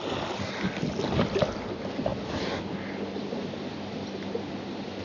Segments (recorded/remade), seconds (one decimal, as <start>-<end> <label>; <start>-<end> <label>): 0.0-5.0 recorded